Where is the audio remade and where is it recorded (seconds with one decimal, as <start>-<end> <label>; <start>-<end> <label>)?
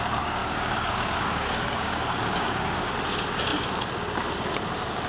0.0-0.4 recorded; 0.4-2.9 remade; 2.9-5.1 recorded